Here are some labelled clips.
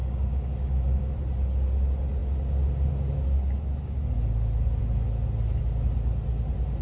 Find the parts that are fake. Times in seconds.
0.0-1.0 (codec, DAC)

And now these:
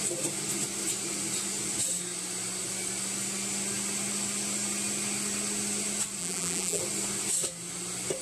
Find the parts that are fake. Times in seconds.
6.2-6.8 (vocoder, BigVGAN v2)

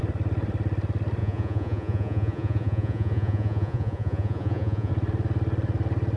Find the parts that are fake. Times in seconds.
1.2-4.9 (vocoder, Vocos)

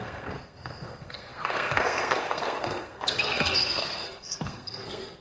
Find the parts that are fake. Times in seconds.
0.0-5.2 (codec, SNAC)

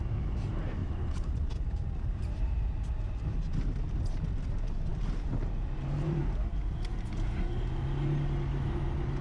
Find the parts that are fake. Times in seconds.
0.8-3.2 (vocoder, BigVGAN v2); 4.9-6.2; 6.9-7.4

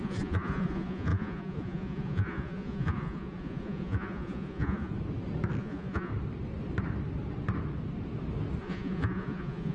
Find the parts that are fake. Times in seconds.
0.0-4.9 (vocoder, Vocos); 5.6-6.1; 8.6-9.7